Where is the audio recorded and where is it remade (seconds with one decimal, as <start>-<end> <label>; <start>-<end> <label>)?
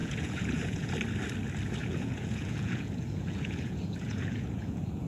0.0-0.9 remade; 0.9-1.8 recorded; 1.8-5.1 remade